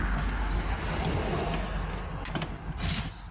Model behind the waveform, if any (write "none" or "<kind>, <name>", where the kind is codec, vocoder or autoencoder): none